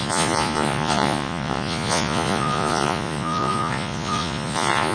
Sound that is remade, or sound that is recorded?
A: remade